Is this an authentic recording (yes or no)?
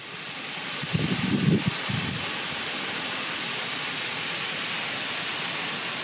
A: yes